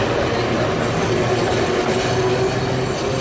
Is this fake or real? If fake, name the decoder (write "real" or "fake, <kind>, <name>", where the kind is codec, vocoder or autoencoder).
real